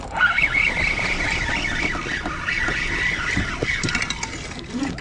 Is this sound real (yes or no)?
yes